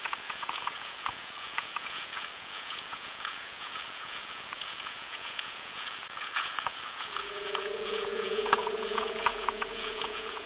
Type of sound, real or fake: fake